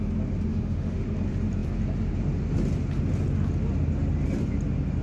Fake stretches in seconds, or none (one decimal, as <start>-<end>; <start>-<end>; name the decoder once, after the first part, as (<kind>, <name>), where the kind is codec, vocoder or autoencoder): 0.5-1.0 (autoencoder, DAC-VAE)

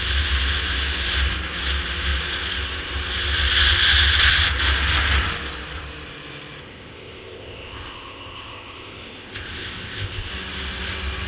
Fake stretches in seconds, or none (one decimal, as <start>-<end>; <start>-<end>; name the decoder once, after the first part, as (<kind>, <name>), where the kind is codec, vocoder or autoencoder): 6.6-10.3 (codec, ZipCodec)

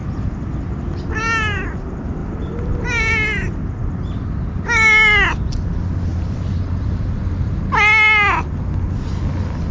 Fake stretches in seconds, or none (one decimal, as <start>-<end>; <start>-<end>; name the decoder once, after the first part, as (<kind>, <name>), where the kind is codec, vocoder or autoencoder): 2.2-3.6 (vocoder, BigVGAN v2); 6.1-7.6

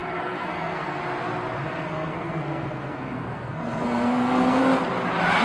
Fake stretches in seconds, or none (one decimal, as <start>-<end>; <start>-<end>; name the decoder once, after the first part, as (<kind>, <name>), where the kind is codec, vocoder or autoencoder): 0.0-1.0 (codec, SNAC); 1.6-4.6

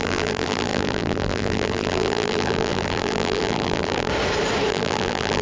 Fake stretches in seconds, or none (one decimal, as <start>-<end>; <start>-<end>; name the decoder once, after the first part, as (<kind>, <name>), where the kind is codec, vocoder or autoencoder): 0.0-4.1 (vocoder, BigVGAN v2); 4.7-5.4

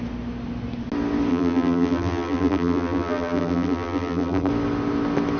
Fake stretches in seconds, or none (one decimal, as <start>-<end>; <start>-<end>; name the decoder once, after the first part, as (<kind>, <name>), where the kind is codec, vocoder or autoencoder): 1.3-4.5 (vocoder, BigVGAN v2)

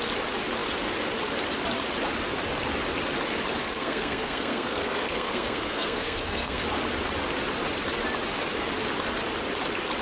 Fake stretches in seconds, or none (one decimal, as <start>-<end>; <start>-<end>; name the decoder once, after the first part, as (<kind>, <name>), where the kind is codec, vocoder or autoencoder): 3.6-6.6 (codec, SNAC)

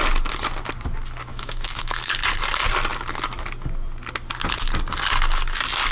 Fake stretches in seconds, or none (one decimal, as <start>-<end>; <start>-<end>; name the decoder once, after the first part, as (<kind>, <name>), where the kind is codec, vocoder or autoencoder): 1.3-2.1 (autoencoder, DAC-VAE)